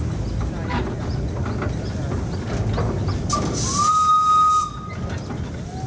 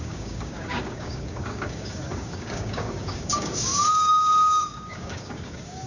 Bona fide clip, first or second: first